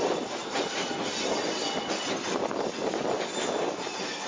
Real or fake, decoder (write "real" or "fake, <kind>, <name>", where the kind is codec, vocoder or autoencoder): real